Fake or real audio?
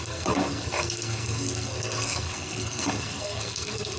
fake